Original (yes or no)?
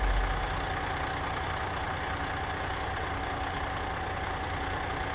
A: yes